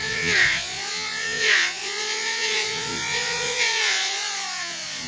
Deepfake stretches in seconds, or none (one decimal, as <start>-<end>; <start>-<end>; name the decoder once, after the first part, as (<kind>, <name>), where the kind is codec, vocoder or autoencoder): 0.0-5.1 (vocoder, Vocos)